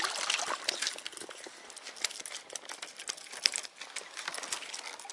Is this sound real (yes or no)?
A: yes